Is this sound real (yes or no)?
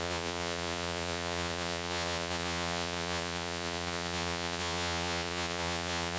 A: no